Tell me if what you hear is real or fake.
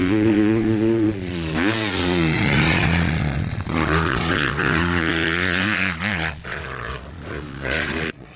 fake